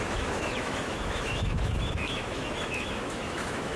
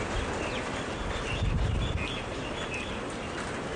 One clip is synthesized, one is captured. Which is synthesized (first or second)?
first